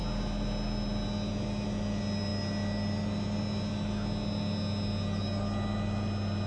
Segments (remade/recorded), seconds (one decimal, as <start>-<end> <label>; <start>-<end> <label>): 0.0-6.5 recorded